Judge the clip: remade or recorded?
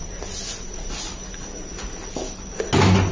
recorded